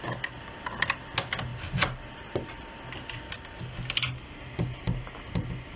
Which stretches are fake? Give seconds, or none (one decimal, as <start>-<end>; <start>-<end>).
none